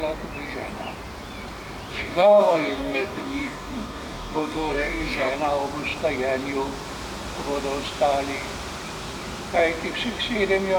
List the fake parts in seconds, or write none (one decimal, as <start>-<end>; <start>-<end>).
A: 1.9-5.3